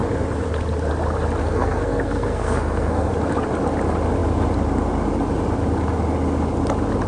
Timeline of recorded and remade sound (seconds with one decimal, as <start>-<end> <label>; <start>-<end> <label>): 0.0-1.4 recorded; 1.4-3.1 remade; 3.1-7.1 recorded